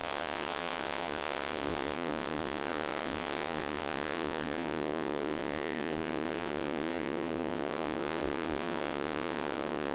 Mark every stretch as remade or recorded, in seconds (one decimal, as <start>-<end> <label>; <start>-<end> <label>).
0.0-9.9 remade